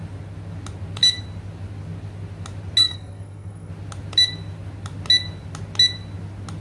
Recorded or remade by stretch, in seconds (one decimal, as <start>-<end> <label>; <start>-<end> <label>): 0.0-2.8 recorded; 2.8-3.7 remade; 3.7-6.6 recorded